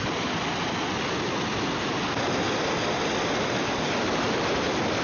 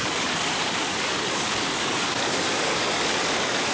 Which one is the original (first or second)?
first